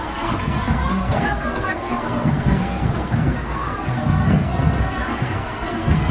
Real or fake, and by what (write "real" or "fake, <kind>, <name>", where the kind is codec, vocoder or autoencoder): fake, codec, SNAC